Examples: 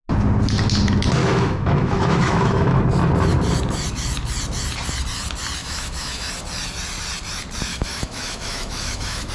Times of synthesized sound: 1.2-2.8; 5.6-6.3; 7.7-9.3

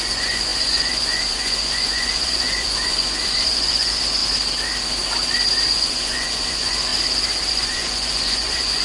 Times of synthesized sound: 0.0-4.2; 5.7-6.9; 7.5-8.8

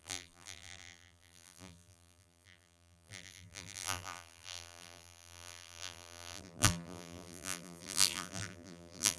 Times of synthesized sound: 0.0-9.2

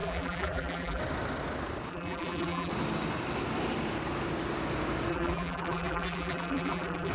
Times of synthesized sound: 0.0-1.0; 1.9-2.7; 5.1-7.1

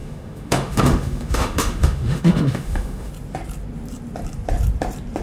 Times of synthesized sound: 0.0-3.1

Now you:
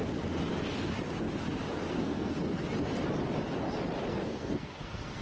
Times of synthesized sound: 1.9-2.4; 4.1-5.2

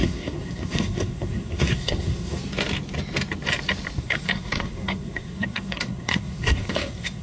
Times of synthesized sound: 0.0-2.4; 4.0-7.2

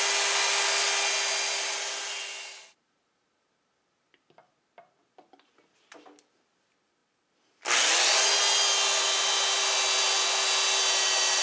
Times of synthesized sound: none